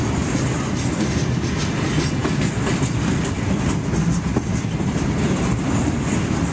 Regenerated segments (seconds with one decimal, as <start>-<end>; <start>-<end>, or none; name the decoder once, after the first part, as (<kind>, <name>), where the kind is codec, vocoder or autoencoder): none